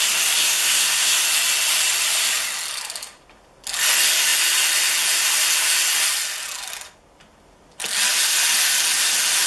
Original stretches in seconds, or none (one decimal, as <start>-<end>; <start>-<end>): 0.0-0.4; 1.1-9.5